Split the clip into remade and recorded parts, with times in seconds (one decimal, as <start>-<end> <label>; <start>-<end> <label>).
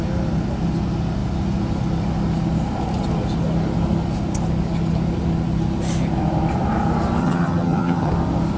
0.0-7.2 recorded; 7.2-8.1 remade; 8.1-8.6 recorded